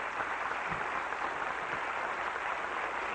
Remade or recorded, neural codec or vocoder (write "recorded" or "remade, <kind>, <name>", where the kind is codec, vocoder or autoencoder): recorded